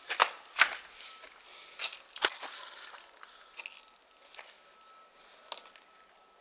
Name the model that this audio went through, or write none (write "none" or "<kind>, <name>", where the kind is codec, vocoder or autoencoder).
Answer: none